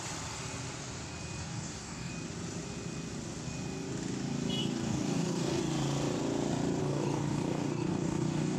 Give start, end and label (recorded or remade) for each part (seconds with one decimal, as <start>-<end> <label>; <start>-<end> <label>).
0.0-1.4 recorded; 1.4-2.1 remade; 2.1-4.6 recorded; 4.6-5.6 remade; 5.6-6.8 recorded; 6.8-8.6 remade